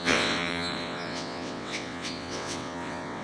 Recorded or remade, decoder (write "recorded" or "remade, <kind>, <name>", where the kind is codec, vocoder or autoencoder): remade, vocoder, WaveNeXt